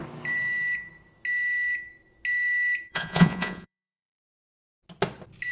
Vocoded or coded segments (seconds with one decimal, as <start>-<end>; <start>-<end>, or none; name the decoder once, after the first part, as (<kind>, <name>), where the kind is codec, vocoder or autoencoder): 2.9-4.2 (vocoder, Vocos)